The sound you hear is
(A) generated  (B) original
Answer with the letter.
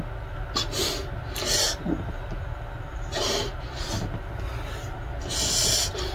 B